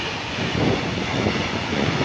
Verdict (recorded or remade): remade